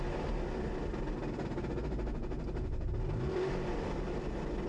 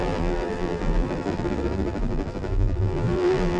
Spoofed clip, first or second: second